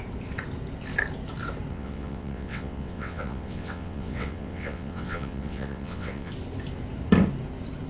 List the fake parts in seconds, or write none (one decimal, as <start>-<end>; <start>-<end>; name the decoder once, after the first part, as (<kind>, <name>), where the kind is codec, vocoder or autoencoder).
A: 1.7-6.3 (vocoder, WaveNeXt)